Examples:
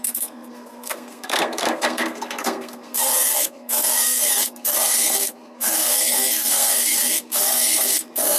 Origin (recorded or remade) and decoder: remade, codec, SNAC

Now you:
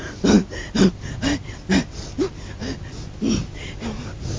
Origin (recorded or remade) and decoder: recorded